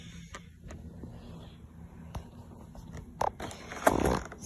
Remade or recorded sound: recorded